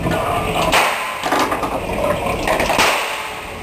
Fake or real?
real